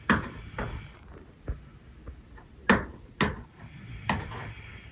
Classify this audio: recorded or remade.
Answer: recorded